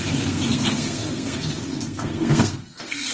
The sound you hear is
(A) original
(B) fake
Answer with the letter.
B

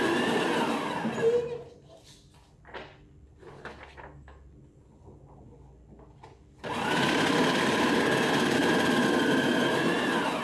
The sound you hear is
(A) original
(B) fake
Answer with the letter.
A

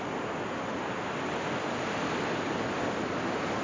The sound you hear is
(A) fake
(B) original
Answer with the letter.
B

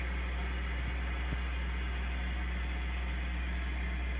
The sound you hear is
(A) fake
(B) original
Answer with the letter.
B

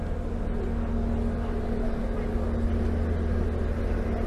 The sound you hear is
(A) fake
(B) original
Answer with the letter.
B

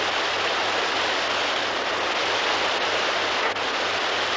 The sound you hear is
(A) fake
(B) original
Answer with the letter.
B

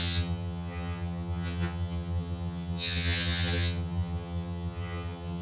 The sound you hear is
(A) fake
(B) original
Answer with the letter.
A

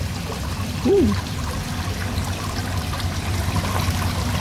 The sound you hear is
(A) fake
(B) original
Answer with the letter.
B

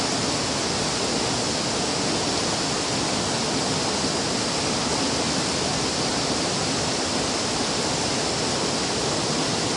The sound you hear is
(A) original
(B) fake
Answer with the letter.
A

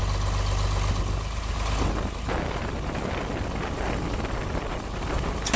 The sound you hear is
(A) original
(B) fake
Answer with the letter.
A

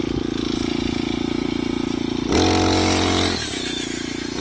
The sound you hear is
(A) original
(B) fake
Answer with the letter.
A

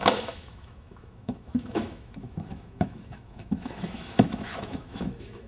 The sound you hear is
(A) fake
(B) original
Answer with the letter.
A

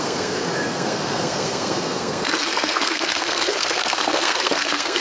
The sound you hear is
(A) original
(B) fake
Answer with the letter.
B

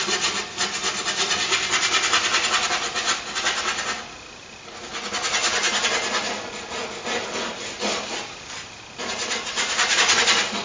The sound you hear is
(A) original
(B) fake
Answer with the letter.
A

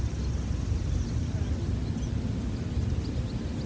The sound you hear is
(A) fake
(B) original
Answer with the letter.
B